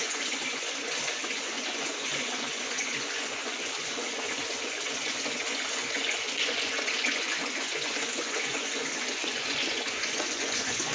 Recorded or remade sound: remade